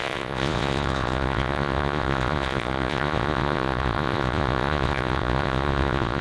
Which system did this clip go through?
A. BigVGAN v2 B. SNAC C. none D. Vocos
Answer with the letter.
D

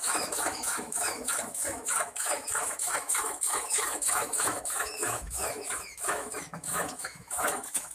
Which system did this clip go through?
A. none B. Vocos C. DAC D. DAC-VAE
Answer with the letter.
D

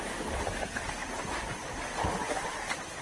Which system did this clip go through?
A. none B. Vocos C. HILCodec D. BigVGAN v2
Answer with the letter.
A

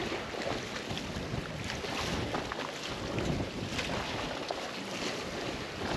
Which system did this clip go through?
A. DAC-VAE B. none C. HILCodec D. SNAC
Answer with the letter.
B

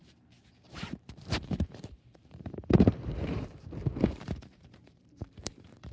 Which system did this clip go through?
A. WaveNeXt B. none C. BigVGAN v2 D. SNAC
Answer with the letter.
C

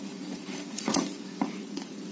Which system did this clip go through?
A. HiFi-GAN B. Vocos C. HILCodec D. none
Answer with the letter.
B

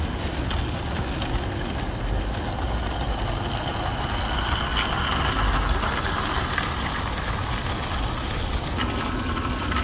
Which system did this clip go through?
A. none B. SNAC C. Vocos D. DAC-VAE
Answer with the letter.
A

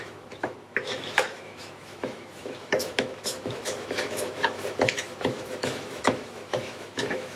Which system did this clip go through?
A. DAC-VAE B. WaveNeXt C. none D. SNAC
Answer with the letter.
A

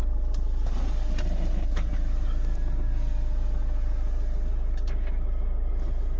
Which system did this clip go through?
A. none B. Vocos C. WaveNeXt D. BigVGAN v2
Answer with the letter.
D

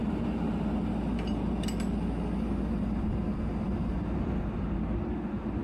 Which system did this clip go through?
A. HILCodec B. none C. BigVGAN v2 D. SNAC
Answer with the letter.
B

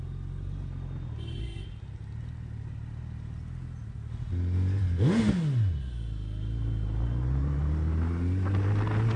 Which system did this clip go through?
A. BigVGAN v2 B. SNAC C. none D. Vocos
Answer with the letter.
C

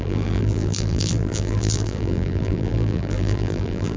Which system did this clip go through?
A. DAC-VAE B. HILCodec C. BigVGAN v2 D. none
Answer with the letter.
C